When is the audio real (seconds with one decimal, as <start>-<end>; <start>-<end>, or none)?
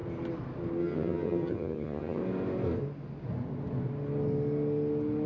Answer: 0.0-0.8; 2.2-5.3